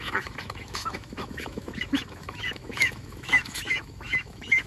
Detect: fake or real fake